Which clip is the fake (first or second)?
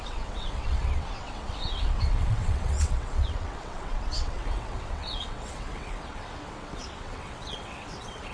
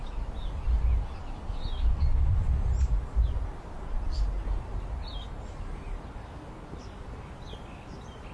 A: first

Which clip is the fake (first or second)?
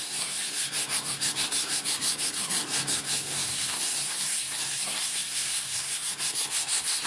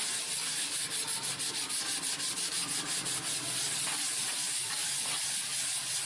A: first